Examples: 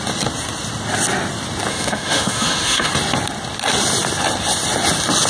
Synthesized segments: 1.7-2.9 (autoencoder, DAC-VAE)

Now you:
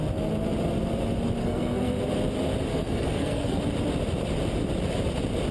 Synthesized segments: 1.4-2.0 (codec, SNAC); 2.7-3.6

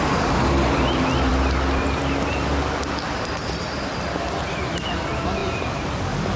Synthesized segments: none

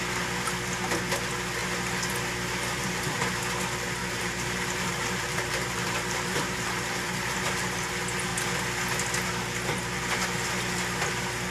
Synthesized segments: 2.8-3.4 (vocoder, BigVGAN v2); 4.0-7.9

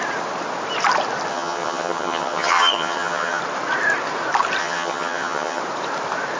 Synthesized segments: 1.3-3.4 (vocoder, HiFi-GAN); 4.6-5.6